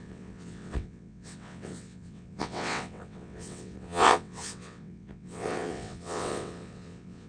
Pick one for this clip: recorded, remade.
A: remade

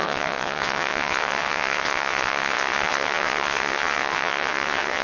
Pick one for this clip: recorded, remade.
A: remade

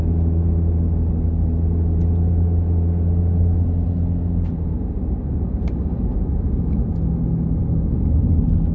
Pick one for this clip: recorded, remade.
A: recorded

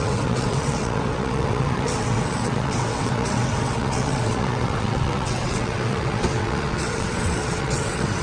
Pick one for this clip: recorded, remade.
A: remade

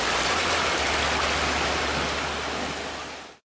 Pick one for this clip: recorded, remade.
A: recorded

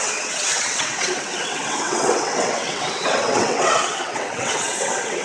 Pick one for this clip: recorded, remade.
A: remade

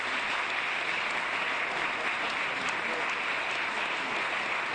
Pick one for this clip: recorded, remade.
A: recorded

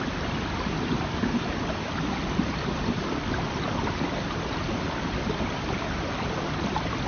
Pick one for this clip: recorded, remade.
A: recorded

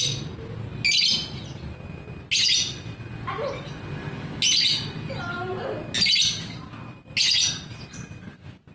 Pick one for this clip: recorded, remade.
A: recorded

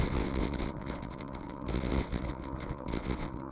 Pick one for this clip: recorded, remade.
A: remade